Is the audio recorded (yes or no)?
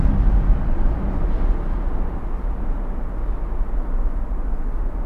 yes